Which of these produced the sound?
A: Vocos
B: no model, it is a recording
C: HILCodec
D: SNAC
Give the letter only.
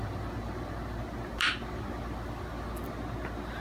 B